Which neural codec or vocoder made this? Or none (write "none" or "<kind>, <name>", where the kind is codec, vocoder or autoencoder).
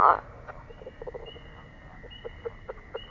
none